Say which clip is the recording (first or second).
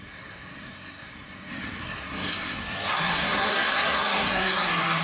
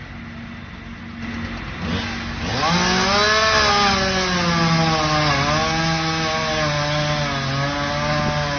second